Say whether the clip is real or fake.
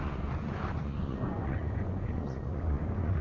fake